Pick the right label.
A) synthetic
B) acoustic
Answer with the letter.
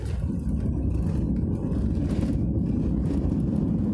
B